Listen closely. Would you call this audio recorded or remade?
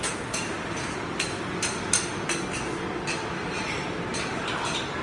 recorded